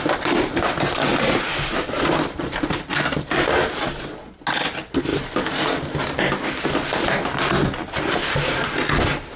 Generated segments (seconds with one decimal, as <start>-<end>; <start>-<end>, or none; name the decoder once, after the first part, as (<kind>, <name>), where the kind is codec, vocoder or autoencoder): 1.1-2.4 (vocoder, BigVGAN v2); 2.9-4.0